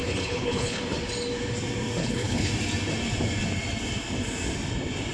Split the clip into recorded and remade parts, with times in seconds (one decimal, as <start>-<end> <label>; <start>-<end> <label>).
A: 0.0-0.8 remade; 0.8-2.0 recorded; 2.0-2.5 remade; 2.5-5.1 recorded